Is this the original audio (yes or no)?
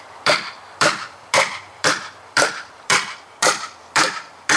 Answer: no